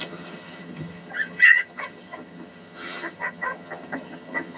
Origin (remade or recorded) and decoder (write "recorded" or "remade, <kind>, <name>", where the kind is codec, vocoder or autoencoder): remade, vocoder, HiFi-GAN